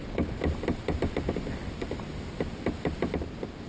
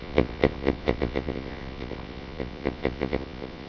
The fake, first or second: second